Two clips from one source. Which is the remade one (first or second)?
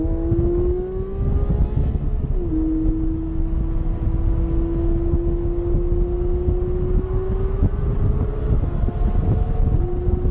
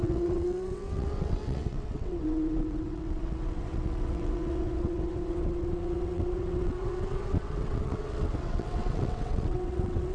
second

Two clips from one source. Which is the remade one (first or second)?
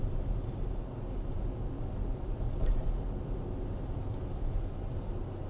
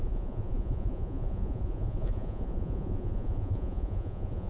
second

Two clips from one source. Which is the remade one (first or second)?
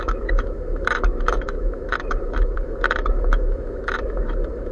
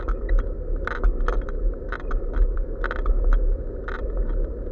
first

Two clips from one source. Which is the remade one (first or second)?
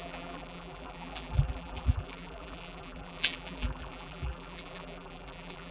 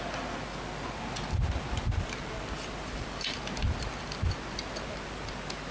first